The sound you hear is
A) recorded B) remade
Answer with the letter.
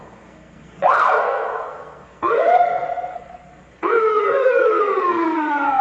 B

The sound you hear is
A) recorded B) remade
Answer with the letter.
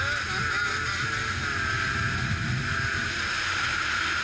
A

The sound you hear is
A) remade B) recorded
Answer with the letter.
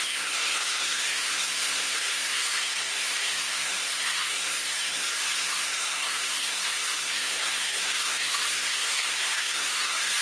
A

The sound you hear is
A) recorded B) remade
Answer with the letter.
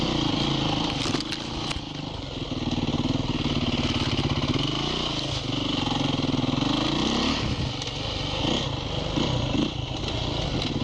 A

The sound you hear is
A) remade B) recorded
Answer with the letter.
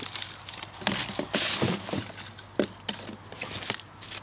B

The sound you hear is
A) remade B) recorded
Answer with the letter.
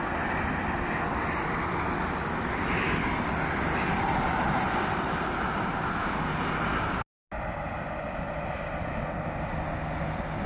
B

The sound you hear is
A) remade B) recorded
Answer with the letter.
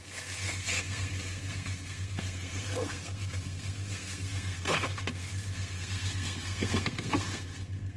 A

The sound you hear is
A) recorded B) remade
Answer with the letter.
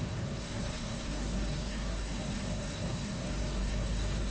B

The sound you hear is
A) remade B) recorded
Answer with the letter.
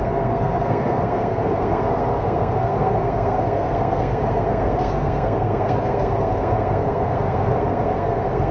A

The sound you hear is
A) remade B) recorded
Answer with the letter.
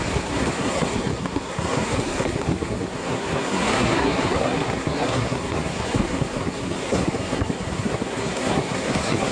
A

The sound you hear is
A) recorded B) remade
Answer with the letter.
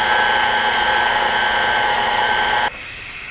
A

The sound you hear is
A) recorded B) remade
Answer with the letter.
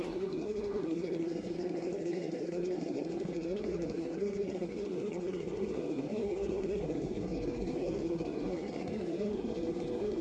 B